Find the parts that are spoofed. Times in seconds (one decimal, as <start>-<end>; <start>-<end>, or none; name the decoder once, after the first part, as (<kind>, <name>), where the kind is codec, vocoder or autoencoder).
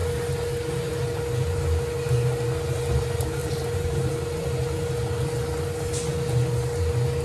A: 3.4-4.1 (vocoder, BigVGAN v2)